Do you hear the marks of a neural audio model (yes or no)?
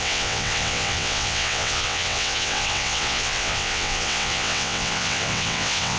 yes